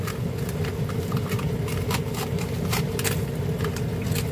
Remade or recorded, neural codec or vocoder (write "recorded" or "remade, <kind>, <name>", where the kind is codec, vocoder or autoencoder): recorded